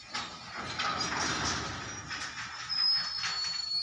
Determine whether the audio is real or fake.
real